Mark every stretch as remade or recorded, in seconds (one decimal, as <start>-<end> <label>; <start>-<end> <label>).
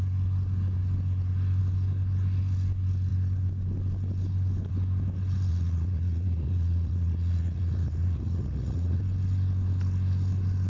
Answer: 0.0-5.5 recorded; 5.5-9.0 remade; 9.0-10.7 recorded